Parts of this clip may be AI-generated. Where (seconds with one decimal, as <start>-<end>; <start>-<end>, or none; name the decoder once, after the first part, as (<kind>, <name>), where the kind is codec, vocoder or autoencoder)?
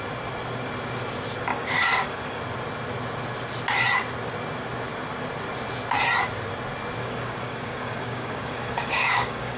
1.5-2.4 (codec, DAC); 7.0-9.6